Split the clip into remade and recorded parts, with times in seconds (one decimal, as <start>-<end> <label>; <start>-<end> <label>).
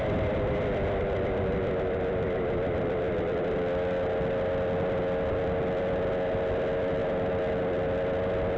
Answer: 0.0-8.6 recorded